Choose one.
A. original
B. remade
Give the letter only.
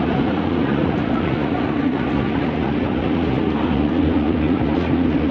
B